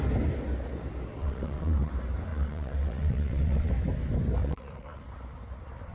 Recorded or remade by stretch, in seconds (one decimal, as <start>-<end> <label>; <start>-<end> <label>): 0.0-1.2 recorded; 1.2-1.9 remade; 1.9-2.3 recorded; 2.3-3.7 remade; 3.7-4.4 recorded; 4.4-5.0 remade; 5.0-5.9 recorded